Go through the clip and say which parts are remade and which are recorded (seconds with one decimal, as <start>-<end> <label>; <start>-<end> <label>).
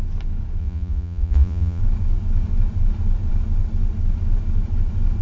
0.0-0.6 recorded; 0.6-1.8 remade; 1.8-5.2 recorded